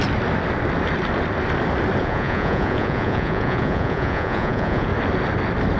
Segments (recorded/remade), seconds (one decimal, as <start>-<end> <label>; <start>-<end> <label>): 0.0-2.0 recorded; 2.0-4.9 remade; 4.9-5.8 recorded